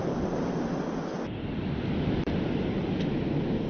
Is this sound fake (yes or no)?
no